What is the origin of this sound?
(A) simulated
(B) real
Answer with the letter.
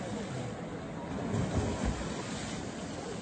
B